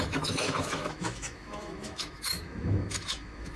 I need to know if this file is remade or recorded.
remade